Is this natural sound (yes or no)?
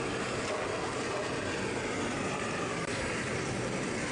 yes